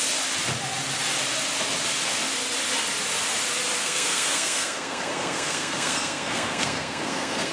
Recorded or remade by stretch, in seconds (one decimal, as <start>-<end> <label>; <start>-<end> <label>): 0.0-3.8 recorded; 3.8-7.5 remade